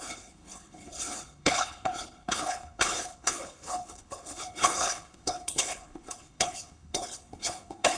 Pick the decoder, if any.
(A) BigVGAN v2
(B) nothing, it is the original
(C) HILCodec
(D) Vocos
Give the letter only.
C